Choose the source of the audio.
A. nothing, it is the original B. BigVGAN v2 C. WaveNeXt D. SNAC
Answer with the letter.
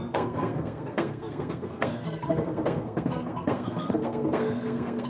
D